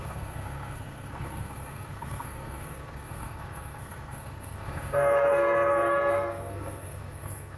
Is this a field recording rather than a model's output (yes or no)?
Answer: no